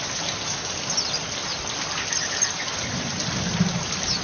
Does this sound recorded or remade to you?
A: recorded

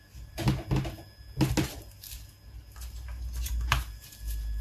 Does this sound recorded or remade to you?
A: recorded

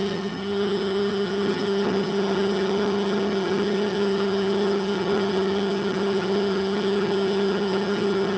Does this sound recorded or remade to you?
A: remade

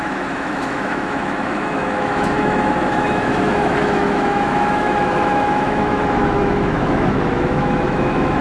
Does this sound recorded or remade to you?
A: remade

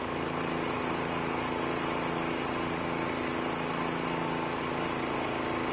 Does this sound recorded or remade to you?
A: recorded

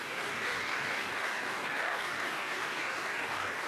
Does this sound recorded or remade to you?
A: remade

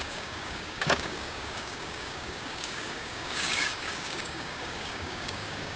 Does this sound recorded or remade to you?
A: remade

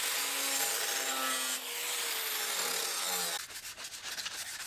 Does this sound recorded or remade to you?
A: recorded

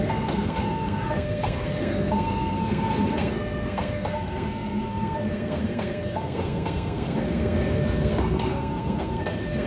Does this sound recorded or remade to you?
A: remade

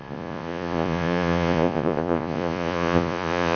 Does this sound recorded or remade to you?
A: remade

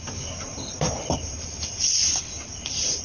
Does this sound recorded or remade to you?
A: remade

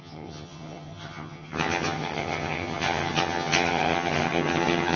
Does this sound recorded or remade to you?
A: remade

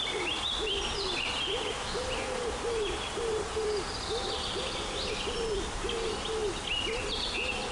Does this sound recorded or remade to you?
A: recorded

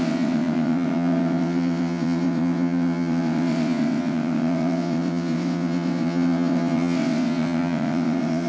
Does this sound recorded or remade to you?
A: remade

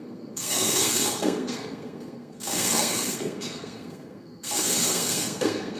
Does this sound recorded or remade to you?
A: remade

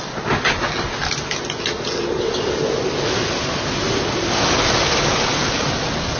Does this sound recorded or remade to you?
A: recorded